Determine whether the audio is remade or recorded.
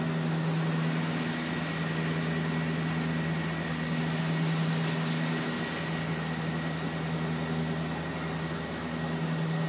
recorded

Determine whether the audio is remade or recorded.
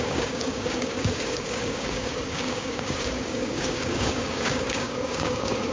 remade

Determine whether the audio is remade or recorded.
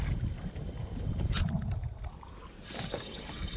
recorded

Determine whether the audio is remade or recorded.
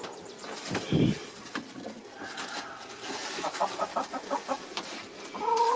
recorded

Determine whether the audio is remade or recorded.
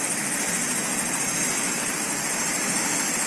recorded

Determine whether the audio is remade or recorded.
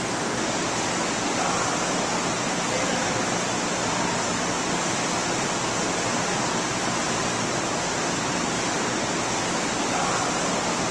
recorded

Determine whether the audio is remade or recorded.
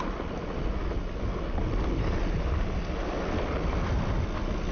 recorded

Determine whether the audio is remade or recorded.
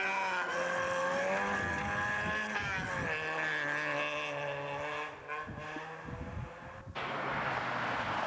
recorded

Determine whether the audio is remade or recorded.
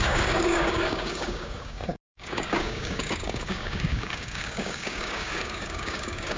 remade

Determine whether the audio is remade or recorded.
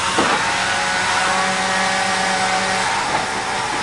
recorded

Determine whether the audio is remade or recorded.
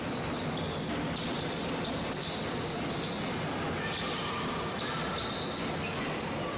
remade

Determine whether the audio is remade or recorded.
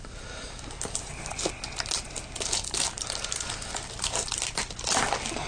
recorded